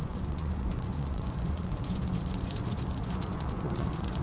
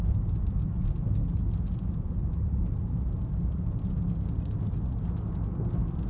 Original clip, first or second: second